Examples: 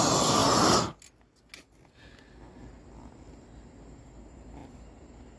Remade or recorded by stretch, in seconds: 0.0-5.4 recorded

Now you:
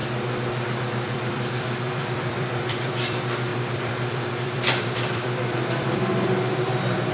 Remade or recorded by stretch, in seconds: 0.0-0.8 recorded; 0.8-7.1 remade

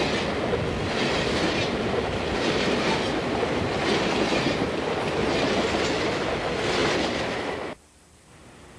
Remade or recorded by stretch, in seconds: 0.0-0.8 recorded; 0.8-4.4 remade; 4.4-6.8 recorded; 6.8-7.6 remade; 7.6-8.8 recorded